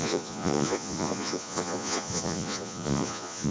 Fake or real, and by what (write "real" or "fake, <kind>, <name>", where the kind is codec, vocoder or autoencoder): fake, vocoder, Vocos